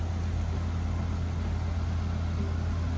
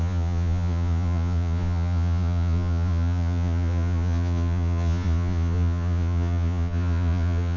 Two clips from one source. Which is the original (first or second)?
first